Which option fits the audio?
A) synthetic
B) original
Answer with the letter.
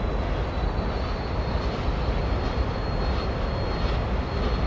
B